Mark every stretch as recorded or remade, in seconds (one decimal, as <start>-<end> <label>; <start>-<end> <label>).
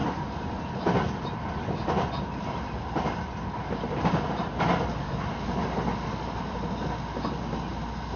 0.0-8.2 recorded